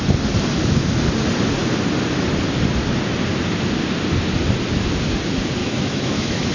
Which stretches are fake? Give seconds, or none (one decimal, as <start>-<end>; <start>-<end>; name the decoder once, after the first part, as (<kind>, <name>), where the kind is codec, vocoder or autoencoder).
5.6-6.5 (autoencoder, DAC-VAE)